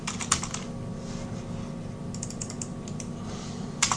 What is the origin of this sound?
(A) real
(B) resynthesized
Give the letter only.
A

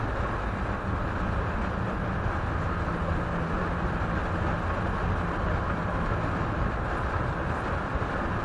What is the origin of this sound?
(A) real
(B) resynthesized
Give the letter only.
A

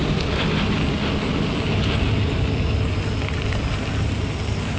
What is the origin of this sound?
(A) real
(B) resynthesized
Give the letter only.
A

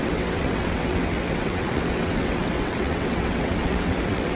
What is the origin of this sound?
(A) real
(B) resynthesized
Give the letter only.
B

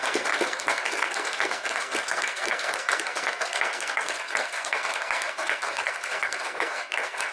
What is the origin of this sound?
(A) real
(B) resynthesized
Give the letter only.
B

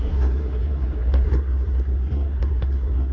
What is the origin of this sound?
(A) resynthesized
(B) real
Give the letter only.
A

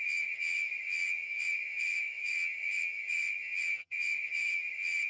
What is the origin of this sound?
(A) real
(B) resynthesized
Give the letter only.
B